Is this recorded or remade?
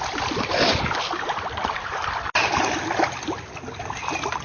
recorded